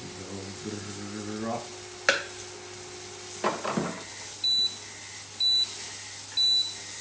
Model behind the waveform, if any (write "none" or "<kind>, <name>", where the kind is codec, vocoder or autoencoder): none